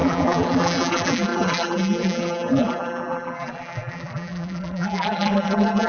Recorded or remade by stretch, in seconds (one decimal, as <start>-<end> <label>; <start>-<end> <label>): 0.0-5.9 remade